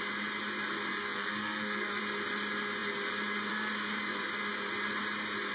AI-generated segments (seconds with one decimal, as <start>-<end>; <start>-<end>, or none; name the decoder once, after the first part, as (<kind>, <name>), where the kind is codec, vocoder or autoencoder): 0.9-2.0 (codec, SNAC)